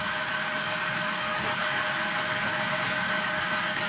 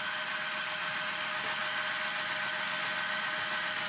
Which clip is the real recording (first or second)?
second